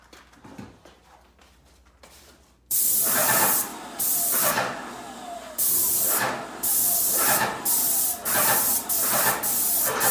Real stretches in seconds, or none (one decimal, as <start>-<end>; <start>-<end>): 0.0-10.1